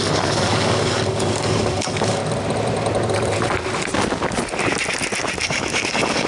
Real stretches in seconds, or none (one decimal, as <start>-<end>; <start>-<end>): 2.2-5.4